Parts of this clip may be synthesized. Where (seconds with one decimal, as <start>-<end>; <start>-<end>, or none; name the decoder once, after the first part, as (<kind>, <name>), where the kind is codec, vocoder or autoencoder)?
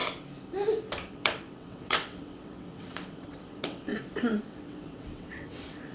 1.1-3.9 (vocoder, WaveNeXt); 4.4-5.9